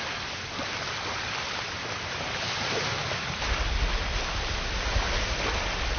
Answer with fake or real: real